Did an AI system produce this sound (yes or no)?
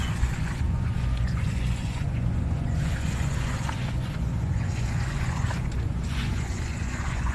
yes